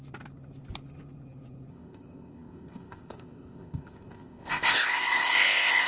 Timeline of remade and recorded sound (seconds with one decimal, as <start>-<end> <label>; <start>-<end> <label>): 0.0-1.7 recorded; 1.7-5.9 remade